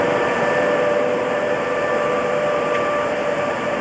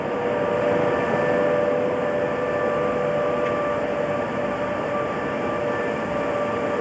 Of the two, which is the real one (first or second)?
second